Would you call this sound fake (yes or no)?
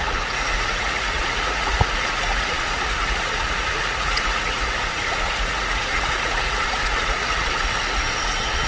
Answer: yes